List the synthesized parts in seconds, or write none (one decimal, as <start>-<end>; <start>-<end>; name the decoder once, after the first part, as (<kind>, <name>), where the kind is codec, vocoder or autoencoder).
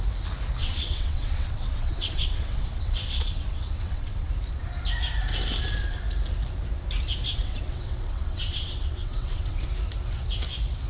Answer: 0.6-4.3 (vocoder, WaveNeXt); 7.3-9.6